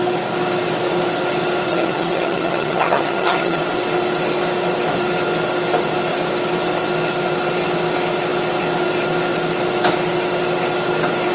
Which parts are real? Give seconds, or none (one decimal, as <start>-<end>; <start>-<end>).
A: 0.0-1.7; 3.6-11.3